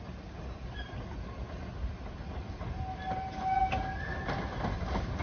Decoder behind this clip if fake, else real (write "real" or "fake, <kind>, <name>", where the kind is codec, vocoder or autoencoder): real